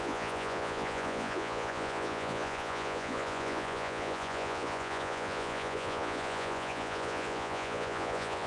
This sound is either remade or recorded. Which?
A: remade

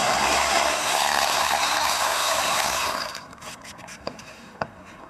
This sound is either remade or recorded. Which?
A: remade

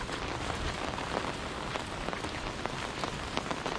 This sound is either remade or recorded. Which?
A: remade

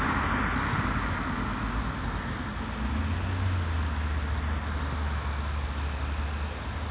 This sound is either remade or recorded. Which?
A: recorded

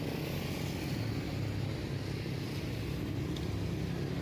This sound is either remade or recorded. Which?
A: recorded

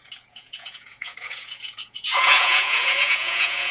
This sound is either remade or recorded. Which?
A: remade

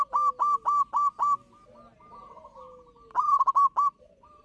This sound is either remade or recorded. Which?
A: recorded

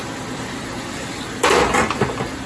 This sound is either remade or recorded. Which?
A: recorded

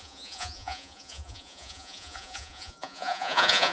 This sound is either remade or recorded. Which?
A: remade